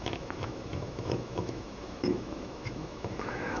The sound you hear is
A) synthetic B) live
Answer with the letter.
A